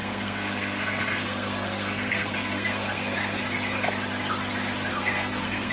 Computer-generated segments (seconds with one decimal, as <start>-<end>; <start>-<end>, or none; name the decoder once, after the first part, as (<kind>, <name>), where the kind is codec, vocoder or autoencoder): 0.0-3.4 (codec, SNAC); 4.9-5.7